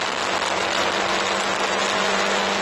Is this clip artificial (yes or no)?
no